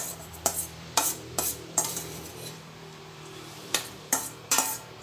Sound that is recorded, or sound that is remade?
remade